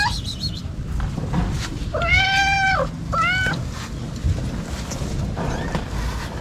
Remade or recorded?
recorded